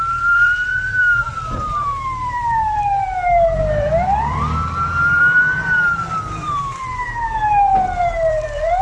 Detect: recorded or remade remade